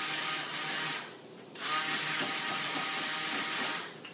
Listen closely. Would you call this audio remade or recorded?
recorded